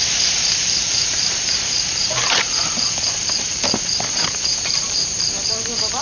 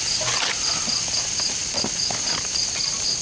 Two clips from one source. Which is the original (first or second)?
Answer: second